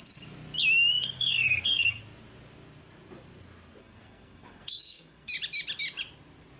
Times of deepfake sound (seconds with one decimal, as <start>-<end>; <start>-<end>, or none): 0.9-2.0; 3.8-5.3